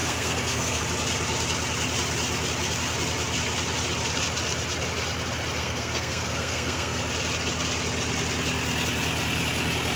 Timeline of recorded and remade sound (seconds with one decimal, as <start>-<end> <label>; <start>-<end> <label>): 0.0-0.8 remade; 0.8-5.6 recorded; 5.6-7.0 remade; 7.0-10.0 recorded